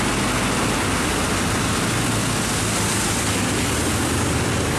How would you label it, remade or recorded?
recorded